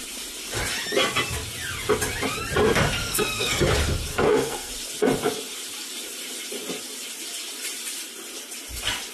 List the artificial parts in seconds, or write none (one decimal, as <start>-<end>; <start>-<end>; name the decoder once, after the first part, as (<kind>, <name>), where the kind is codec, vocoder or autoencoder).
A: 3.0-3.6 (codec, SNAC); 4.1-4.7